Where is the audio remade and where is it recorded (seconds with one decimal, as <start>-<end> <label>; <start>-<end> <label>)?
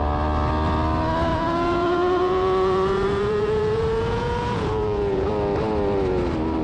0.0-1.3 recorded; 1.3-5.3 remade; 5.3-6.6 recorded